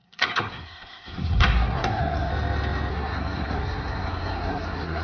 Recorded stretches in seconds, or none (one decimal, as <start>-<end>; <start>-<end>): 2.3-2.9